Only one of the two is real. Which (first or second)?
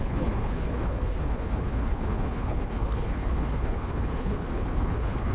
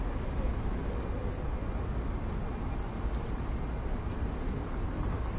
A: second